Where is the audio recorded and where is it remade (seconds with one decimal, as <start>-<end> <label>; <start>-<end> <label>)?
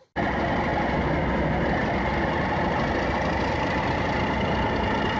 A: 0.0-5.2 recorded